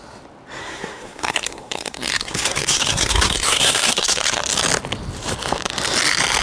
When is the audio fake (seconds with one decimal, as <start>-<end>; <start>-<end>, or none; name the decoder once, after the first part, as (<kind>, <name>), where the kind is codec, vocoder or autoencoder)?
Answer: 0.6-4.4 (codec, SNAC)